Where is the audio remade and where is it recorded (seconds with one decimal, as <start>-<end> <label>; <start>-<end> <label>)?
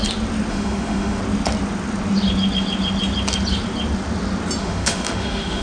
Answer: 0.0-0.5 recorded; 0.5-1.2 remade; 1.2-4.6 recorded; 4.6-5.6 remade